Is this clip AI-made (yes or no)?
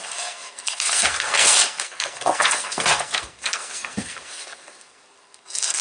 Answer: yes